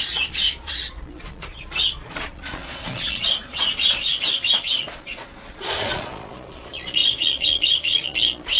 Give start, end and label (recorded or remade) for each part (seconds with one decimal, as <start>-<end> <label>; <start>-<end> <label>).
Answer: 0.0-8.6 remade